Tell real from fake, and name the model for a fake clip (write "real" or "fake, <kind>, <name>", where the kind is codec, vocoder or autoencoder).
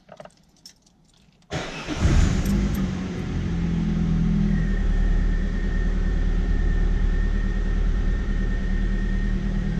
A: fake, vocoder, BigVGAN v2